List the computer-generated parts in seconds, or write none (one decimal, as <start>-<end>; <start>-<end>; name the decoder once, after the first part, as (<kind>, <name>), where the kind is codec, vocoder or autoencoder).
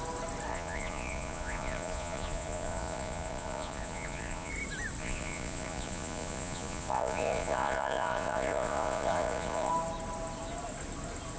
0.5-4.5 (vocoder, Vocos); 5.0-9.7